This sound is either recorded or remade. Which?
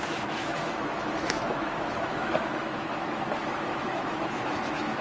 remade